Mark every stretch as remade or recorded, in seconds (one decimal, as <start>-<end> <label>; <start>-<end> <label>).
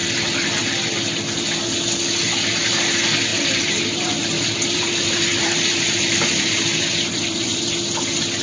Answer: 0.0-3.3 recorded; 3.3-7.6 remade; 7.6-8.4 recorded